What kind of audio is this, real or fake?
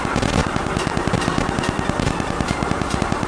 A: fake